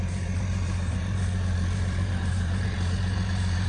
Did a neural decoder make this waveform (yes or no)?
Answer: yes